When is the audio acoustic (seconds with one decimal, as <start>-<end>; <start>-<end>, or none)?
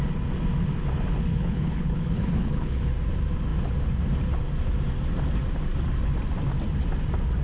0.0-1.3; 2.9-7.4